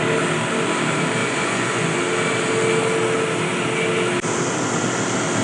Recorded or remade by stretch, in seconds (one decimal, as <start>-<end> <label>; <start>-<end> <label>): 0.0-1.2 recorded; 1.2-2.0 remade; 2.0-5.4 recorded